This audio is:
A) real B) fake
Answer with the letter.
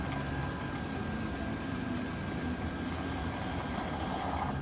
A